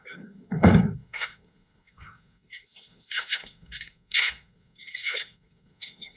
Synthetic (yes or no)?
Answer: yes